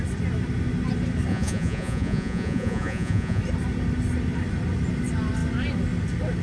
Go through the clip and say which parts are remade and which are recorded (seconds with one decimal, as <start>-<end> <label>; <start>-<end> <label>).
0.0-1.3 recorded; 1.3-3.4 remade; 3.4-6.4 recorded